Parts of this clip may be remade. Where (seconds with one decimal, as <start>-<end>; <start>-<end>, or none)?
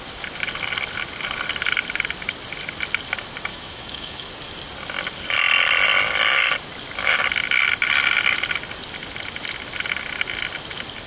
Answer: 3.5-4.3